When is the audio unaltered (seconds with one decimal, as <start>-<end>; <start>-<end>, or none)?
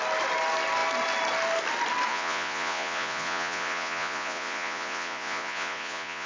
0.0-2.1